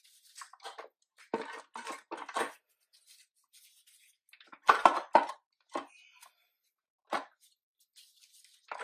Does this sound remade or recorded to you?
recorded